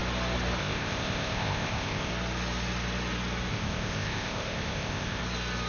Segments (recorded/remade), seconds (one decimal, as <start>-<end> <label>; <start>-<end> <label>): 0.0-0.6 recorded; 0.6-2.1 remade; 2.1-3.5 recorded; 3.5-5.2 remade; 5.2-5.7 recorded